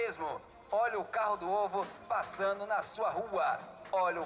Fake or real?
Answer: real